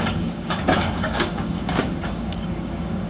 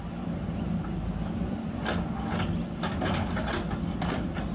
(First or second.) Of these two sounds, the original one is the second